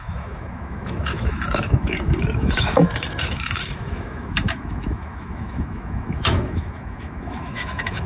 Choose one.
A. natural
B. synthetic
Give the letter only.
B